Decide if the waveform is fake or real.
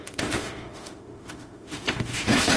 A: fake